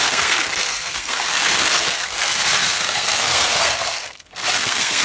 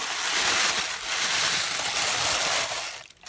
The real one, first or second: second